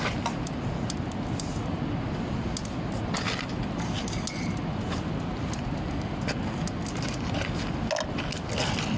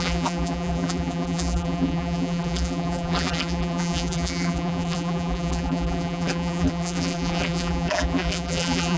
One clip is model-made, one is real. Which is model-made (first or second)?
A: second